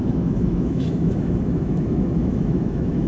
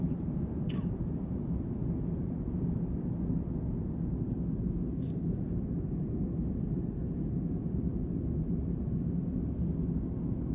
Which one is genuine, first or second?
second